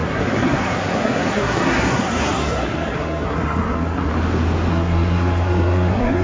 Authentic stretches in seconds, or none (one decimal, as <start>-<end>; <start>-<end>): 4.1-4.7